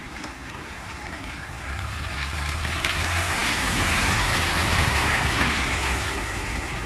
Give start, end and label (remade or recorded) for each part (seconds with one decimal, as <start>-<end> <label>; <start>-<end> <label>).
0.0-6.9 remade